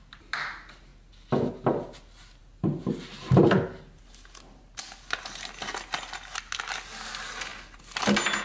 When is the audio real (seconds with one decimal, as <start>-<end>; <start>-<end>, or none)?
0.0-8.4